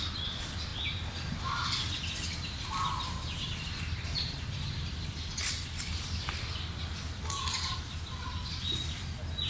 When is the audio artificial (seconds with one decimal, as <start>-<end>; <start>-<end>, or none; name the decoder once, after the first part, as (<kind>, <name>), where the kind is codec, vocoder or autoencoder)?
none